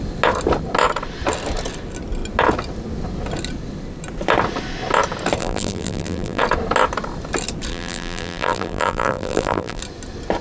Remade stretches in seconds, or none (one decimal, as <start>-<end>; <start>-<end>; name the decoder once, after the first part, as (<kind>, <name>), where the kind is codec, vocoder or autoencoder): 5.4-6.4 (vocoder, BigVGAN v2); 7.7-9.8